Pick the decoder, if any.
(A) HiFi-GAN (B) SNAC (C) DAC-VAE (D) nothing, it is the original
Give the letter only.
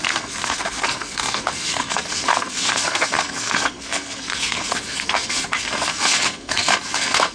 B